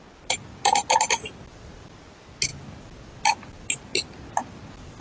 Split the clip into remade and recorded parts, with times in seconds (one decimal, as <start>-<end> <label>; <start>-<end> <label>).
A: 0.0-5.0 recorded